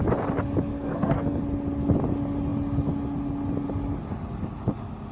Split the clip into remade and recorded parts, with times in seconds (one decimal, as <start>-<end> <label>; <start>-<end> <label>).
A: 0.0-0.7 recorded; 0.7-1.4 remade; 1.4-5.1 recorded